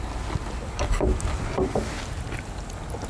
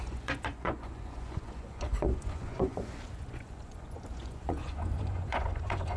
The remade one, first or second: second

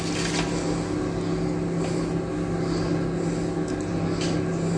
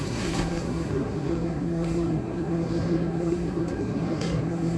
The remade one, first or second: second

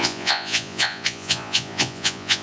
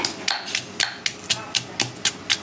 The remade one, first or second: first